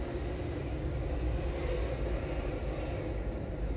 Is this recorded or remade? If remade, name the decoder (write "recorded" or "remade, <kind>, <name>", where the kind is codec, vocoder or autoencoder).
recorded